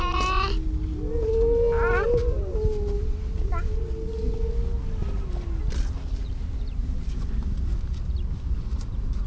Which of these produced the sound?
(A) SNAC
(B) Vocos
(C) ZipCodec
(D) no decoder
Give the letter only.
D